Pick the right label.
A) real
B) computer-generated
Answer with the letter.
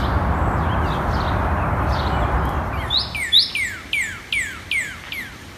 A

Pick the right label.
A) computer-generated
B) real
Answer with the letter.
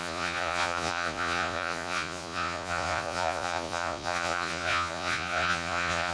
A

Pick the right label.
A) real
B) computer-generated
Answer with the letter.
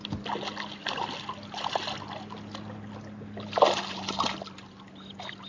A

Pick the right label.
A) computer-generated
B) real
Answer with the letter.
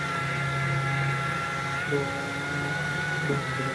B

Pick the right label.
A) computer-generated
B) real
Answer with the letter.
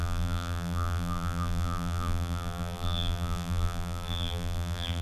A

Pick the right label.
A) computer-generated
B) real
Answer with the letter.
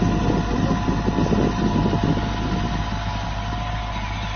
B